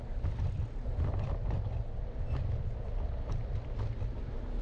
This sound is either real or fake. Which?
real